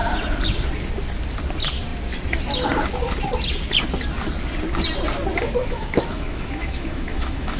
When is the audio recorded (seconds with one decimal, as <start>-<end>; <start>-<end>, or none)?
0.0-5.6